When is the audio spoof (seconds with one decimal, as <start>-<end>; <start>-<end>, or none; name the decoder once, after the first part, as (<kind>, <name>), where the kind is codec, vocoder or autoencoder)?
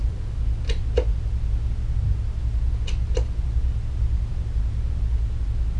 none